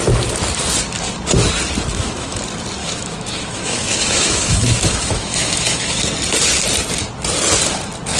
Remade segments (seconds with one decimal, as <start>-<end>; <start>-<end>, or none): 1.9-2.4; 2.8-6.0